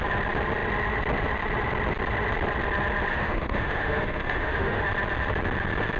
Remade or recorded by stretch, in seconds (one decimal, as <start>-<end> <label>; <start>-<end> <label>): 0.0-3.1 recorded; 3.1-4.8 remade; 4.8-6.0 recorded